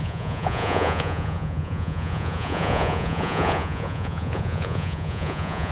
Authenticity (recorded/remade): remade